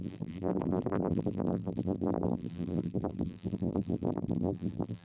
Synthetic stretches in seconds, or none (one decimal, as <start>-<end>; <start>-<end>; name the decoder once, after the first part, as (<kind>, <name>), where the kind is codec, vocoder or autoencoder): 0.0-5.0 (vocoder, BigVGAN v2)